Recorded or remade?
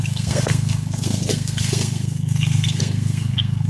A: remade